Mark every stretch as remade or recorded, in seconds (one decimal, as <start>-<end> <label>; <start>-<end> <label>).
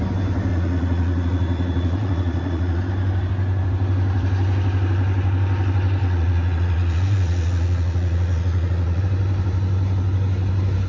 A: 0.0-0.5 recorded; 0.5-2.8 remade; 2.8-6.0 recorded; 6.0-9.0 remade; 9.0-10.9 recorded